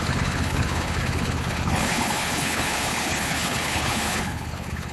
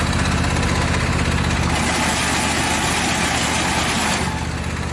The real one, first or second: second